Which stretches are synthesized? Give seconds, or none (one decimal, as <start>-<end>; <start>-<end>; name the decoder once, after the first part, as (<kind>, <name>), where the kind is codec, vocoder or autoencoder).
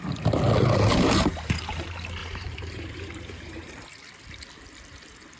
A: 0.9-1.8 (vocoder, BigVGAN v2); 2.2-3.7